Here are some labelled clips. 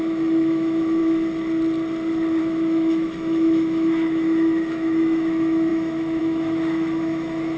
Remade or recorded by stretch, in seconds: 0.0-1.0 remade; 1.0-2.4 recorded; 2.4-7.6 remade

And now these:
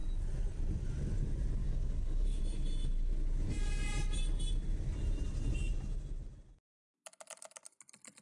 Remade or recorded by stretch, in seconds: 0.0-1.6 recorded; 1.6-2.4 remade; 2.4-8.2 recorded

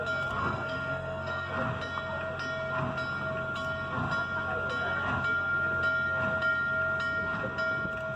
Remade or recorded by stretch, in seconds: 0.0-0.4 recorded; 0.4-1.5 remade; 1.5-8.2 recorded

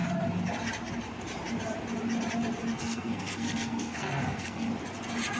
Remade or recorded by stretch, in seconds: 0.0-2.7 recorded; 2.7-4.7 remade; 4.7-5.4 recorded

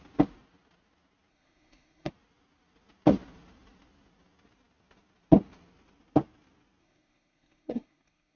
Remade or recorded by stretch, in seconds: 0.0-1.3 recorded; 1.3-2.1 remade; 2.1-6.8 recorded; 6.8-8.4 remade

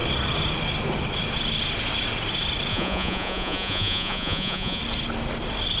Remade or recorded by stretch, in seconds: 0.0-2.7 recorded; 2.7-4.8 remade; 4.8-5.8 recorded

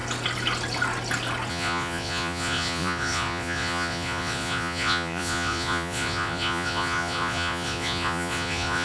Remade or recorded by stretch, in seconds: 0.0-1.5 recorded; 1.5-8.8 remade

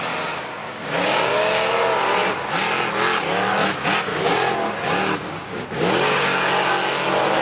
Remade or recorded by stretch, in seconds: 0.0-0.6 recorded; 0.6-1.7 remade; 1.7-4.1 recorded; 4.1-6.4 remade; 6.4-7.4 recorded